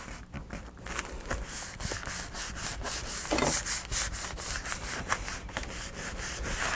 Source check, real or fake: real